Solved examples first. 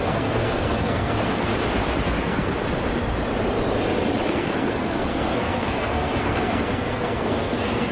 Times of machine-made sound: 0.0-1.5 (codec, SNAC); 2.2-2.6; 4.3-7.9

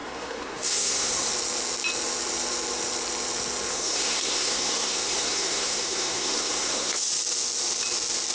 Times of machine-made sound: 0.0-1.3 (codec, SNAC); 3.7-6.9